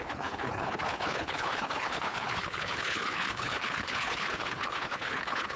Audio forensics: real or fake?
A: fake